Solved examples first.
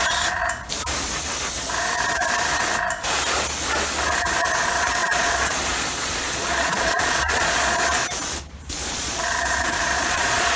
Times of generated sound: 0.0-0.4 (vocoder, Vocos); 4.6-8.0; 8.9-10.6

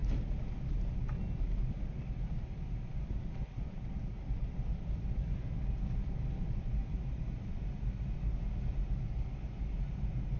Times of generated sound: none